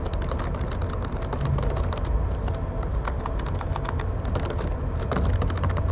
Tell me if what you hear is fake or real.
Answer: real